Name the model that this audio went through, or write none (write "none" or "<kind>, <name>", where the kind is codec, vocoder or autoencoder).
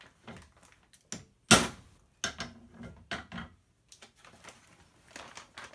none